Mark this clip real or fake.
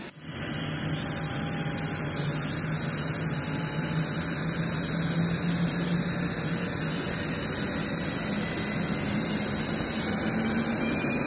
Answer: real